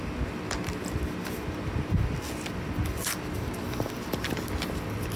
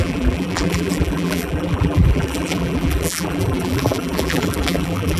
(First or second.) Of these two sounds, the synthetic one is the second